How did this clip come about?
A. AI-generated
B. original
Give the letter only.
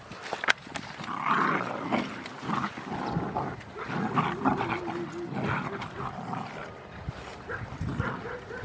B